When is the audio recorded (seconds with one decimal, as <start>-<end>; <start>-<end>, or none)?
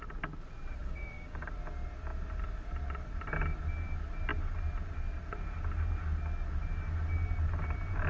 0.0-0.8; 1.5-8.1